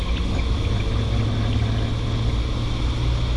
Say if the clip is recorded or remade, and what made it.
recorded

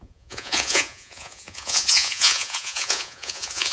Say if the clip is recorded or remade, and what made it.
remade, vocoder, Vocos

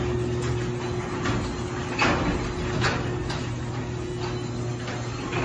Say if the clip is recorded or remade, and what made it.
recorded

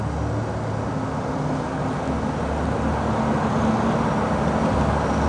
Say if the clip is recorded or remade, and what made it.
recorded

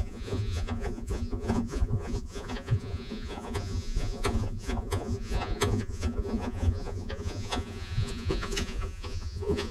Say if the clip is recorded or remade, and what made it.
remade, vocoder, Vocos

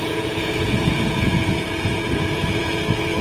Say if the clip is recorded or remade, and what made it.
remade, vocoder, Vocos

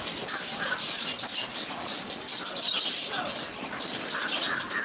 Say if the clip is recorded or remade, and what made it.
recorded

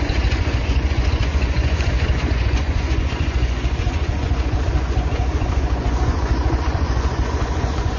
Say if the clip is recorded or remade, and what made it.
remade, vocoder, Vocos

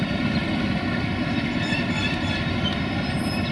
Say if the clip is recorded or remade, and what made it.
recorded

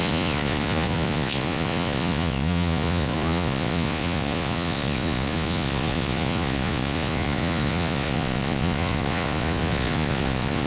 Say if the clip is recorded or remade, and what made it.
remade, vocoder, Vocos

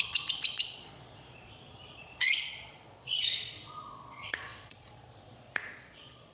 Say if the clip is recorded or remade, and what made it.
remade, vocoder, Vocos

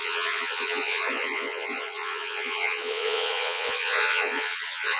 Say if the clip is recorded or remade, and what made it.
remade, vocoder, Vocos